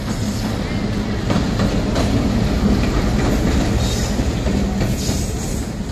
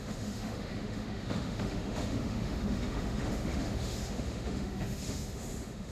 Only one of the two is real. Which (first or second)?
first